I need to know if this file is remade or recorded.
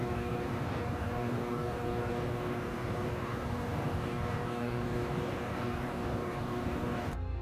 remade